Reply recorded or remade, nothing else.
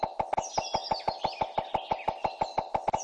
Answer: recorded